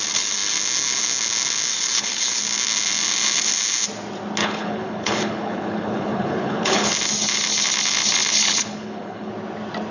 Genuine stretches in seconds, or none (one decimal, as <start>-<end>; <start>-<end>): 0.0-1.7; 2.4-4.4; 6.9-8.4; 9.3-9.9